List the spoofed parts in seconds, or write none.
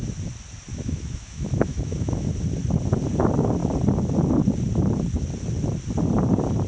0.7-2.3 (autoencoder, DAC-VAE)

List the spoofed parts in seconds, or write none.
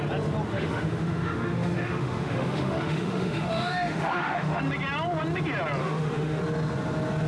0.5-4.6 (autoencoder, DAC-VAE); 5.8-6.4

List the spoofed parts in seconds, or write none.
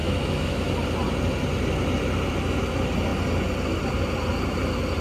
0.0-0.7 (autoencoder, DAC-VAE)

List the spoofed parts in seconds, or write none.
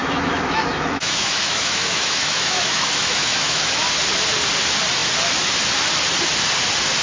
0.0-3.8 (autoencoder, DAC-VAE)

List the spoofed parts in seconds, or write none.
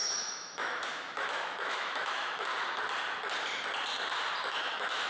0.0-2.5 (autoencoder, DAC-VAE); 4.5-5.1